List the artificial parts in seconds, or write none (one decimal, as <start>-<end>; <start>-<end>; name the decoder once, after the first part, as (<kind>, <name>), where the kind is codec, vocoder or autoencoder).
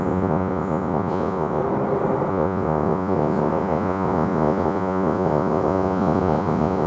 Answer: 0.0-1.6 (vocoder, Vocos); 2.3-6.9